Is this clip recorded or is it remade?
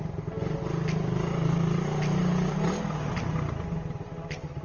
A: recorded